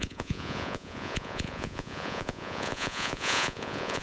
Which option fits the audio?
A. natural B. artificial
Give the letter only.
B